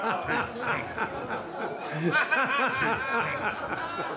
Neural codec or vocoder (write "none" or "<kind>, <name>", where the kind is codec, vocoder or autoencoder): none